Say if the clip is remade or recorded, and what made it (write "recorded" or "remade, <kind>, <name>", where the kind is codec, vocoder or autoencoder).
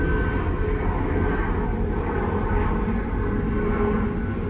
recorded